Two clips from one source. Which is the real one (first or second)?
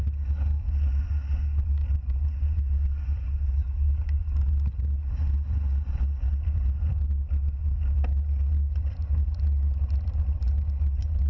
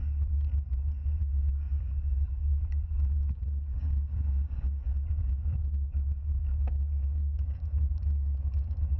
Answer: first